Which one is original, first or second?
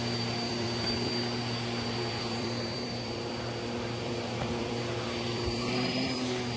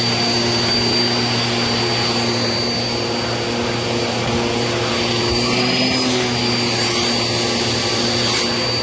second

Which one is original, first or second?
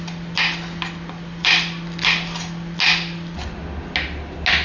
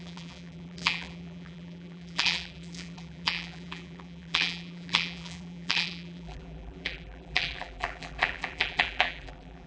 first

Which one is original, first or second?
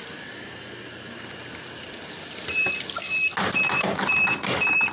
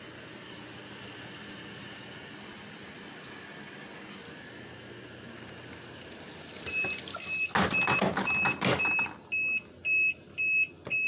second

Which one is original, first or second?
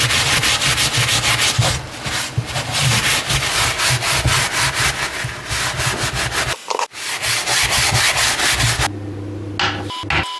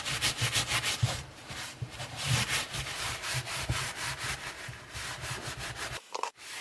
first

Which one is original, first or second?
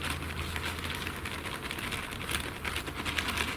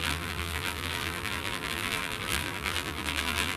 first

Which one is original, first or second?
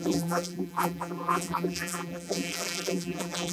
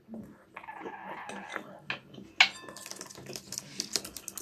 second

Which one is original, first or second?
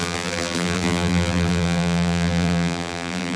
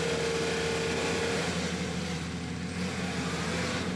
second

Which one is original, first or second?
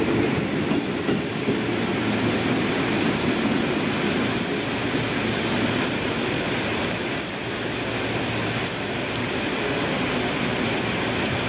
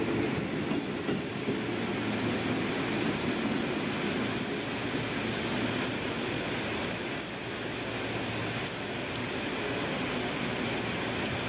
second